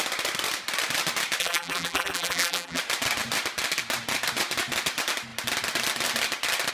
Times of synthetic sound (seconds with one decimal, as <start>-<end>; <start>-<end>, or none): 1.4-2.8